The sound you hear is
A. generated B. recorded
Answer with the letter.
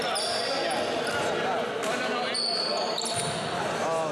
B